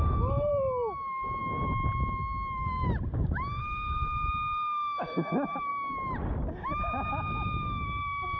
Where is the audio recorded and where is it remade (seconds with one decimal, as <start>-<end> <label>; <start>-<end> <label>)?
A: 0.0-1.4 remade; 1.4-3.6 recorded; 3.6-5.7 remade; 5.7-7.1 recorded; 7.1-8.4 remade